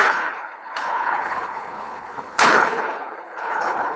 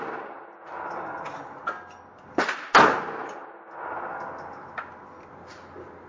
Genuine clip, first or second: second